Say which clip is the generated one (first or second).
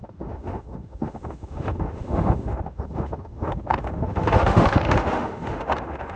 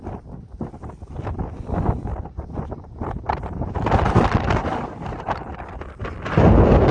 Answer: first